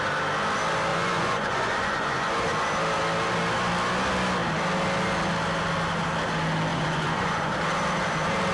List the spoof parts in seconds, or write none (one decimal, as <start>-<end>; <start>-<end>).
0.9-2.3; 6.7-7.5